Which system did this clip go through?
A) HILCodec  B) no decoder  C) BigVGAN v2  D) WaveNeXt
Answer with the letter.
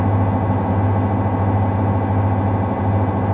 B